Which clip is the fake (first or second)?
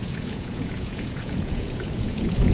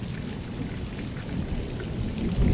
first